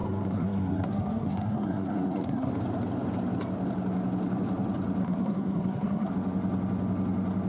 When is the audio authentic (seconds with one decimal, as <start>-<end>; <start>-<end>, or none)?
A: 2.5-5.0; 6.1-7.5